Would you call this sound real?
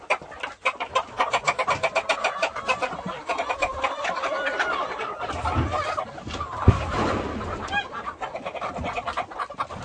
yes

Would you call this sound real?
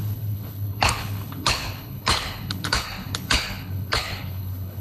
no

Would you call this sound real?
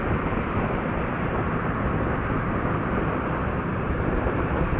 yes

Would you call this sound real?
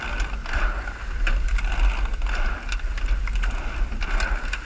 yes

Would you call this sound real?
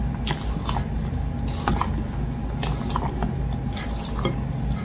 yes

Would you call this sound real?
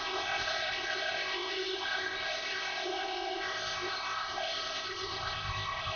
no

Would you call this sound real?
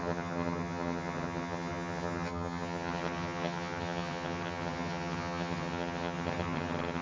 no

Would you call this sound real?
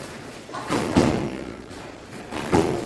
no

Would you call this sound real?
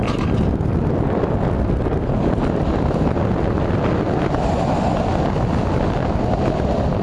yes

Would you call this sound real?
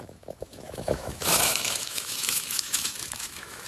no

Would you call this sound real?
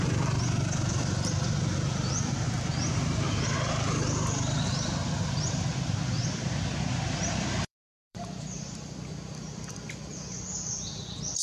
no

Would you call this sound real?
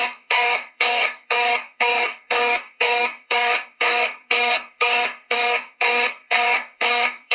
no